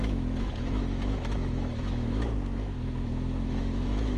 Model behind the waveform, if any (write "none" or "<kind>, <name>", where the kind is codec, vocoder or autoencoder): autoencoder, DAC-VAE